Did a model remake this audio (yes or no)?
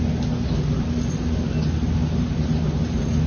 no